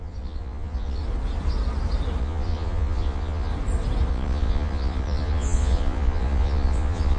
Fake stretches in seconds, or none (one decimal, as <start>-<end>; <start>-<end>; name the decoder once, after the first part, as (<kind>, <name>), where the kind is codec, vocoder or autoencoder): 0.0-1.0 (vocoder, Vocos); 2.2-3.5; 4.1-7.2

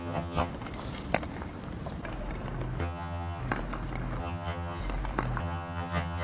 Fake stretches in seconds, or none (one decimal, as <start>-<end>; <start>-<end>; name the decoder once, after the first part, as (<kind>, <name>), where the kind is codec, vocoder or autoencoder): 0.0-0.5 (vocoder, HiFi-GAN); 2.8-3.4; 4.2-4.8; 5.4-6.2

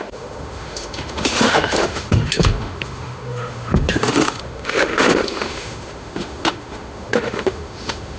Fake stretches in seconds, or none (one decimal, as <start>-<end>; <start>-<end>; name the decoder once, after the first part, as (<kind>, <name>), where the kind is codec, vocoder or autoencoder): 0.0-8.2 (autoencoder, DAC-VAE)

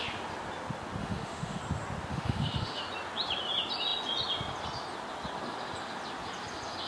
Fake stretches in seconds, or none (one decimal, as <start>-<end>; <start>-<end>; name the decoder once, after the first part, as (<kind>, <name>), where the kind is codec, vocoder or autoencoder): 1.0-1.6 (autoencoder, DAC-VAE); 2.1-2.8

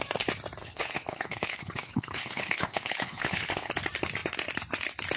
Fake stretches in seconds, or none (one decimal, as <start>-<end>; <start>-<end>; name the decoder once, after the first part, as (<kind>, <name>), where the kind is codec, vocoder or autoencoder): 0.6-3.7 (codec, HILCodec)

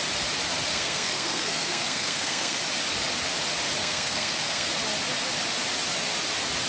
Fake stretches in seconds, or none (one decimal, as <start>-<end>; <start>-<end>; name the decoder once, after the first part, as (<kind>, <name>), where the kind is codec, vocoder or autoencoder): 0.7-2.6 (codec, SNAC); 3.8-4.7

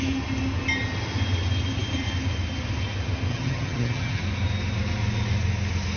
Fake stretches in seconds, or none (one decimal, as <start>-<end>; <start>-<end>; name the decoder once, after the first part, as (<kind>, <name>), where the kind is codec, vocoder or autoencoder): 3.3-4.2 (vocoder, HiFi-GAN)

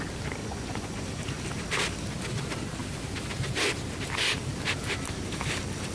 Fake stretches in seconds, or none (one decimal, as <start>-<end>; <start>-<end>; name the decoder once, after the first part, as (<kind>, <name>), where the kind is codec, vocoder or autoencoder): 0.4-1.0 (vocoder, Vocos)